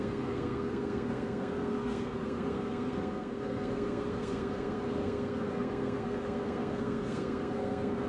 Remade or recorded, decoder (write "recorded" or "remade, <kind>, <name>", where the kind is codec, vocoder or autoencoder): remade, codec, SNAC